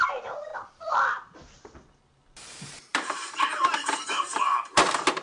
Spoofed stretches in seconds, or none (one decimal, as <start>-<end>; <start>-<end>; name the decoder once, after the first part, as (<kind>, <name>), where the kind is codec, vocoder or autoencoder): 0.0-0.5 (vocoder, BigVGAN v2); 2.5-5.2